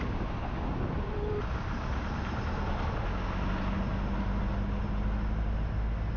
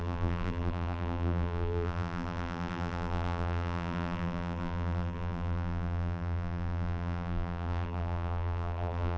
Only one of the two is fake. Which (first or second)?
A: second